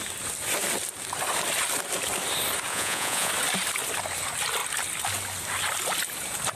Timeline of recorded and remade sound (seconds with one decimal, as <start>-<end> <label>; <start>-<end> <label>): 0.0-2.7 recorded; 2.7-3.3 remade; 3.3-6.6 recorded